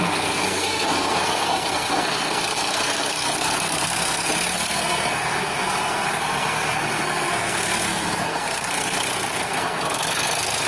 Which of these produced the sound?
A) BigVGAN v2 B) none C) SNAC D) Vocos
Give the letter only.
C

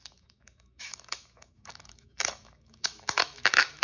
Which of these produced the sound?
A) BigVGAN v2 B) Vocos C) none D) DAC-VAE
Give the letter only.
D